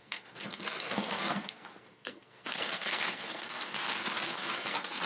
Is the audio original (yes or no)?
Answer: no